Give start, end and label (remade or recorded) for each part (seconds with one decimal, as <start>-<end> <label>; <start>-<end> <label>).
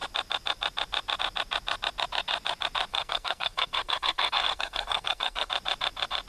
0.0-2.9 recorded; 2.9-5.5 remade; 5.5-6.3 recorded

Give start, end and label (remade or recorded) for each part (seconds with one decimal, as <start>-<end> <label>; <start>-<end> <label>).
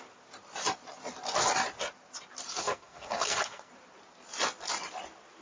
0.0-2.6 recorded; 2.6-3.7 remade; 3.7-5.4 recorded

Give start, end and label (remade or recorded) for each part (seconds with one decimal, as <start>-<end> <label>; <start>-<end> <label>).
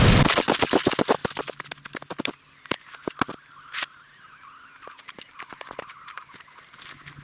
0.0-7.2 recorded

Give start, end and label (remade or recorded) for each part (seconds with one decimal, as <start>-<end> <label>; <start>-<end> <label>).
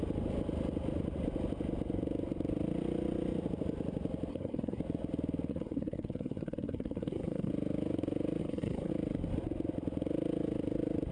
0.0-4.3 recorded; 4.3-4.8 remade; 4.8-5.5 recorded; 5.5-7.5 remade; 7.5-8.4 recorded; 8.4-8.9 remade; 8.9-11.1 recorded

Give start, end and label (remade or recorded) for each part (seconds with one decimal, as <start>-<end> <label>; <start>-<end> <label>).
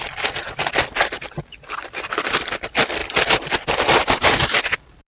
0.0-5.1 recorded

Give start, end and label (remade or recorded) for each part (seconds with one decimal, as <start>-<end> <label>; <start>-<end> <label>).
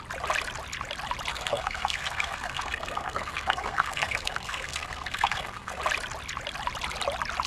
0.0-1.3 recorded; 1.3-5.8 remade; 5.8-7.5 recorded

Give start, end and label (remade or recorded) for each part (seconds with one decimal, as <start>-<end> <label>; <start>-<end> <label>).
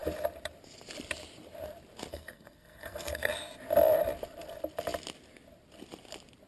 0.0-2.1 recorded; 2.1-3.3 remade; 3.3-6.5 recorded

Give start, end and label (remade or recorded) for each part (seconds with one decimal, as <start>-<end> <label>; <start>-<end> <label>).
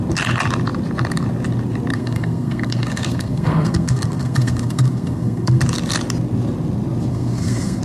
0.0-1.9 recorded; 1.9-5.6 remade; 5.6-7.1 recorded; 7.1-7.8 remade